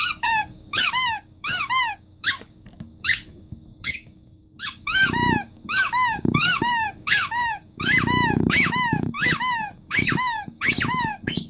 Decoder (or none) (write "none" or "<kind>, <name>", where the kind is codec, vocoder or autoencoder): codec, DAC